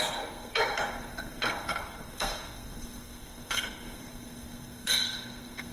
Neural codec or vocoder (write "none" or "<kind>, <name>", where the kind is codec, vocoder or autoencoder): codec, SNAC